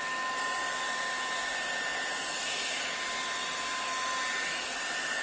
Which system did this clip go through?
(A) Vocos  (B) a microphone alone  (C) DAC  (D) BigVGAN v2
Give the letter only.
B